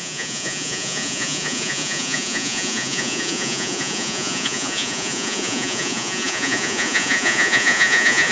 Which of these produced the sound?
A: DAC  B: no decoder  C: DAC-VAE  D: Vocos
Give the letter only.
D